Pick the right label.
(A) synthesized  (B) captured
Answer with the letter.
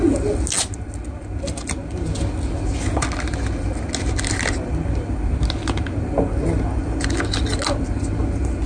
B